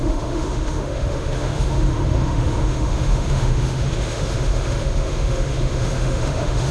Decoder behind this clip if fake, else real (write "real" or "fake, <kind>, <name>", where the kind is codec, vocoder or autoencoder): fake, autoencoder, DAC-VAE